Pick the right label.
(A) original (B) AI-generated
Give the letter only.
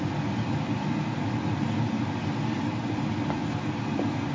A